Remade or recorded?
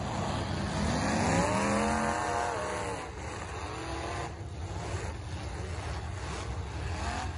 recorded